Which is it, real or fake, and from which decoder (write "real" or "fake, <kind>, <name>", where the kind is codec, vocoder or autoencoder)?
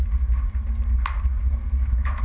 real